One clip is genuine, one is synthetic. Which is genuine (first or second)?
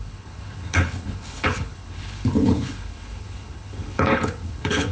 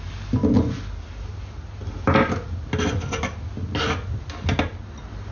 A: second